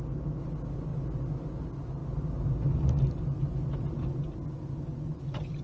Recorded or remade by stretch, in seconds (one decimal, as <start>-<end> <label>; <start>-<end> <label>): 0.0-5.6 recorded